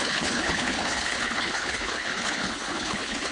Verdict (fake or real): fake